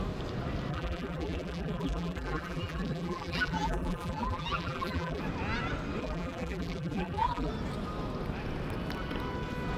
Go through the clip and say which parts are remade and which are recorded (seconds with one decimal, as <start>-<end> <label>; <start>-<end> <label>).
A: 0.0-0.7 recorded; 0.7-5.2 remade; 5.2-6.0 recorded; 6.0-7.5 remade; 7.5-9.8 recorded